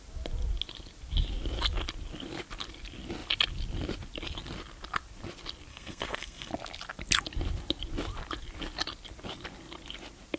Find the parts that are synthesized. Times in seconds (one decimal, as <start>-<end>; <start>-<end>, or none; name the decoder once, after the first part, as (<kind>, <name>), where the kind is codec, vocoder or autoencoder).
5.7-6.5 (codec, SNAC)